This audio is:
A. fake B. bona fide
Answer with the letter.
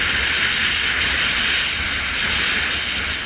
B